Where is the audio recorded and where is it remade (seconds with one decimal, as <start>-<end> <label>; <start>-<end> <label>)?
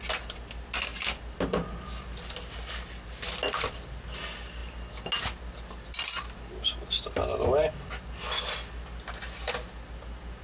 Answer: 0.0-10.4 recorded